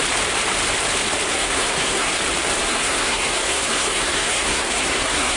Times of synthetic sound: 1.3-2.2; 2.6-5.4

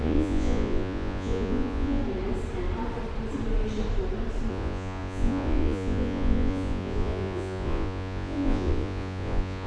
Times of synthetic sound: 0.0-2.0; 4.5-9.7

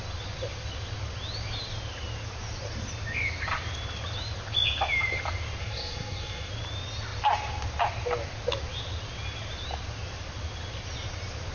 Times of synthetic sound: 5.6-6.5

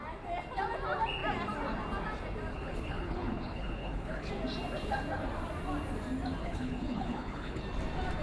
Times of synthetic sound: 2.5-4.3; 6.4-7.6

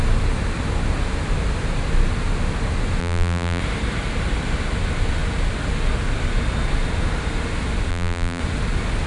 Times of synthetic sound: 3.0-3.6; 7.9-8.4

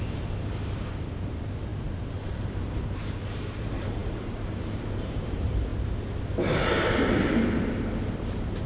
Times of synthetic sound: 0.0-5.7; 8.2-8.7

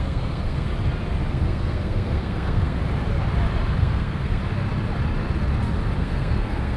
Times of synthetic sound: 0.0-0.7; 1.3-2.8; 3.8-4.4; 6.0-6.8